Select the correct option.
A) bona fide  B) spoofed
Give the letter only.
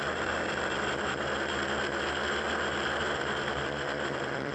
B